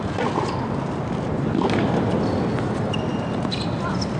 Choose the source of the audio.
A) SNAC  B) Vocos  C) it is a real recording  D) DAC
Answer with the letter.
C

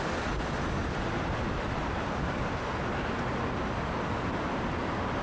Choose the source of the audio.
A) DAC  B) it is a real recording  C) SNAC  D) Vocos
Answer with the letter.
B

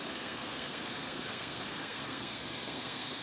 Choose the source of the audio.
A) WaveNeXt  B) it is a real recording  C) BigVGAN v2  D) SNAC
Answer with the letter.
D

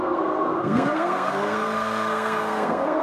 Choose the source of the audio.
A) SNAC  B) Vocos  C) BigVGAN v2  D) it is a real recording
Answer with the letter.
A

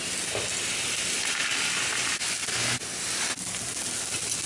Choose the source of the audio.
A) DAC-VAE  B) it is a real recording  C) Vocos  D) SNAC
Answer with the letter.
B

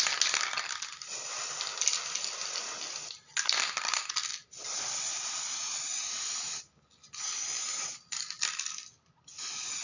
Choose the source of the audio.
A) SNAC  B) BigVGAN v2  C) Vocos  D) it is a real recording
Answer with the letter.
D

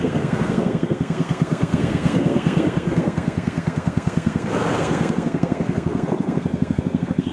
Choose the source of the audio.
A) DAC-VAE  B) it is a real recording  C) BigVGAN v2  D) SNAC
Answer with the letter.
D